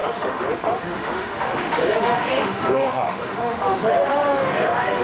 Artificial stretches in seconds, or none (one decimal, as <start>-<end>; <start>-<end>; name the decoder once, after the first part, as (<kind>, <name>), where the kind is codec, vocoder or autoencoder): 0.0-5.0 (autoencoder, DAC-VAE)